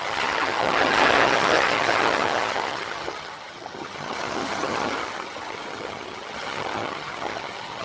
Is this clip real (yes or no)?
no